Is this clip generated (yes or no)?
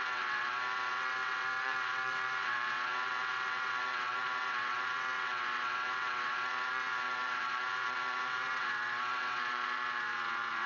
yes